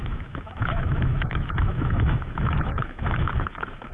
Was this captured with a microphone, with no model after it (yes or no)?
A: no